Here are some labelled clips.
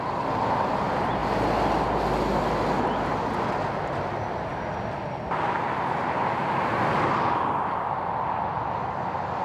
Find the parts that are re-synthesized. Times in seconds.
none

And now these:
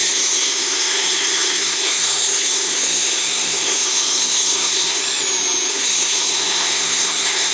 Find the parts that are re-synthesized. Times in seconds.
0.0-5.0 (codec, SNAC); 5.7-7.5

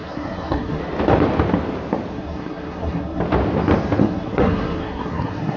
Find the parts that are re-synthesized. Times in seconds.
0.0-0.8 (codec, SNAC); 2.1-3.2; 4.0-5.6

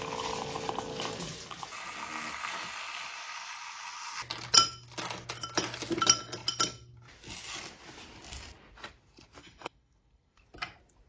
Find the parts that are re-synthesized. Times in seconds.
9.4-10.4 (codec, SNAC)

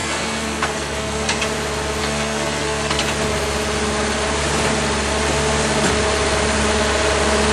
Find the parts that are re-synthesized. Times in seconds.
0.0-1.4 (codec, SNAC); 2.0-3.0

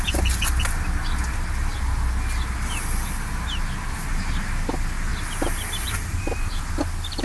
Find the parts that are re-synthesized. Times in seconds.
none